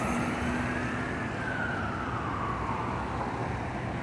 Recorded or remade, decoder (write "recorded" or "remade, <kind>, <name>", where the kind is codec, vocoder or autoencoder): recorded